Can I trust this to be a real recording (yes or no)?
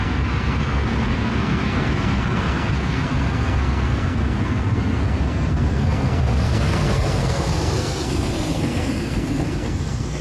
no